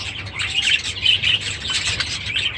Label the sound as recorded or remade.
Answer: recorded